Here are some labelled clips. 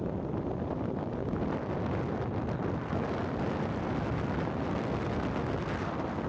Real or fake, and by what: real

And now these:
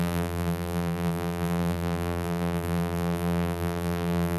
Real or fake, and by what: fake, vocoder, BigVGAN v2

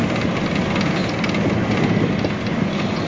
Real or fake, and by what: real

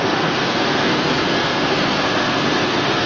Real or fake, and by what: fake, codec, SNAC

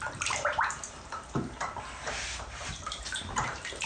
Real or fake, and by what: fake, vocoder, BigVGAN v2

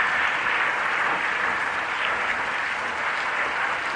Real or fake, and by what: real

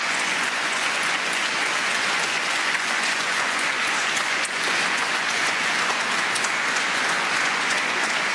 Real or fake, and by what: fake, vocoder, Vocos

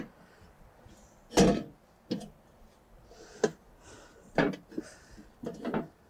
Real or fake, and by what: real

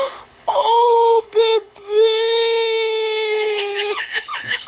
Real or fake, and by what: fake, codec, HILCodec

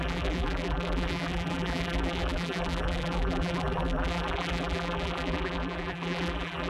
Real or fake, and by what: fake, vocoder, BigVGAN v2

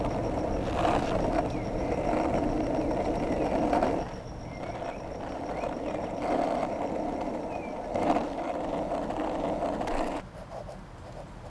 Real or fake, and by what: real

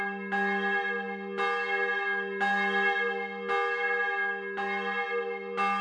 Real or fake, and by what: real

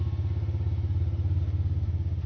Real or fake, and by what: real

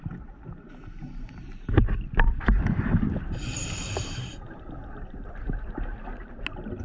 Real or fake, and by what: real